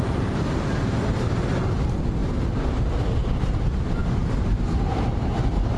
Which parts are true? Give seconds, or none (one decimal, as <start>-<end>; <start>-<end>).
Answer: 0.0-5.8